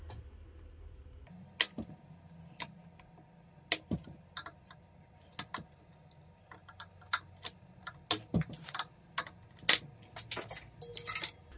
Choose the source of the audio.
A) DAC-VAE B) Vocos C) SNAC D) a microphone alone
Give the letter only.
D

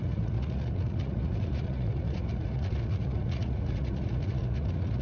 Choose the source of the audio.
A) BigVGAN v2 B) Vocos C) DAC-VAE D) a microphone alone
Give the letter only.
B